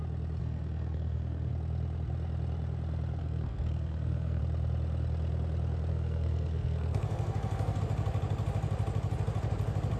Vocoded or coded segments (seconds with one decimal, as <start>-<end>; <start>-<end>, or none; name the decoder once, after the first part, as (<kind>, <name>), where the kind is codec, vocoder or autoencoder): 0.4-1.5 (codec, SNAC); 3.2-4.4; 5.9-7.8